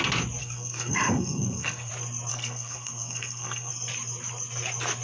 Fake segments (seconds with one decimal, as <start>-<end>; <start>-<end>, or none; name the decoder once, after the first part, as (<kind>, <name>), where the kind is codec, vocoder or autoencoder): 0.4-1.9 (codec, SNAC); 2.3-3.7